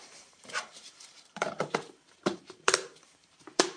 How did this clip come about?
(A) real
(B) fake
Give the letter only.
B